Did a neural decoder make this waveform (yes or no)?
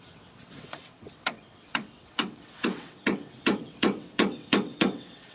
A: yes